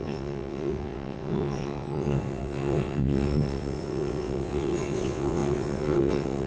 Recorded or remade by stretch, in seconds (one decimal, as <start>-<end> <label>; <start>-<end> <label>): 0.0-6.5 remade